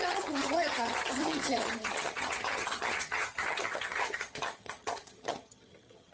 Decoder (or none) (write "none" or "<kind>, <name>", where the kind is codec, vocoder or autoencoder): vocoder, HiFi-GAN